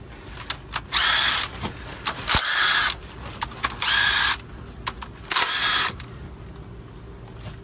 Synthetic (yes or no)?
no